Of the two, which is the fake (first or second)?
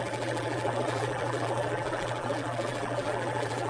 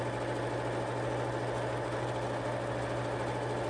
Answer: first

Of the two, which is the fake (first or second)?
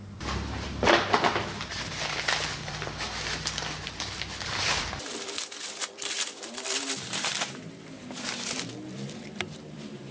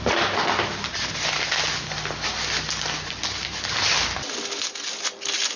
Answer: first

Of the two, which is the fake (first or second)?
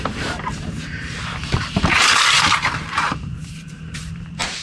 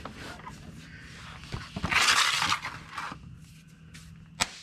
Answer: first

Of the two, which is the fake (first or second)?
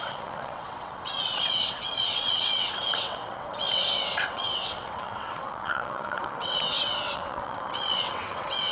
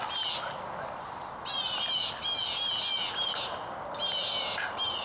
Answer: first